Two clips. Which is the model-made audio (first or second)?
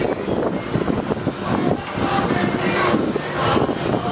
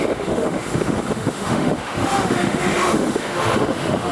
second